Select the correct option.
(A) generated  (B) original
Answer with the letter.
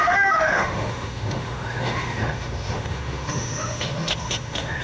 A